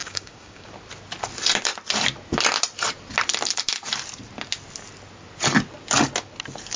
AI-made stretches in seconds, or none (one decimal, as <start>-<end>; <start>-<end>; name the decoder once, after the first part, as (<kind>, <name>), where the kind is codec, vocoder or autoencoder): 0.0-0.7 (codec, DAC)